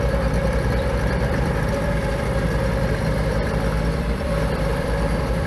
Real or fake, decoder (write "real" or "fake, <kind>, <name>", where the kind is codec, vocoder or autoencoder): fake, vocoder, BigVGAN v2